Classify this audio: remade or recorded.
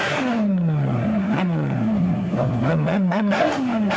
remade